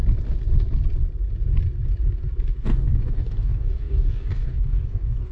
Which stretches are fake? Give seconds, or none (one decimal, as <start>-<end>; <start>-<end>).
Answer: 2.6-5.3